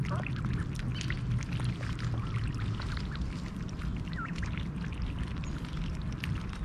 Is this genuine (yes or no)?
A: yes